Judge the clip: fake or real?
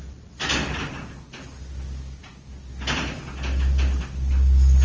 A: real